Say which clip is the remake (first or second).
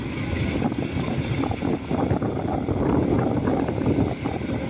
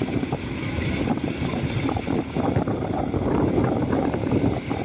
second